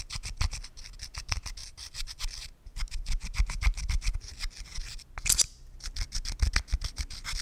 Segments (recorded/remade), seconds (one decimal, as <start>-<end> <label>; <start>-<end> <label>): 0.0-1.6 recorded; 1.6-2.2 remade; 2.2-7.4 recorded